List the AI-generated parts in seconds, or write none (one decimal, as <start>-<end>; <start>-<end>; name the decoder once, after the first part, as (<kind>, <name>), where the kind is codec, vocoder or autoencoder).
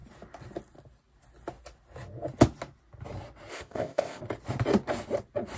3.5-4.2 (codec, ZipCodec)